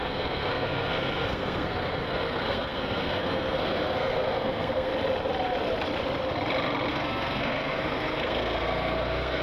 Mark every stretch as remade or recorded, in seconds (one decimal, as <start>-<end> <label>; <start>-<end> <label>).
0.0-4.9 remade; 4.9-6.9 recorded; 6.9-9.4 remade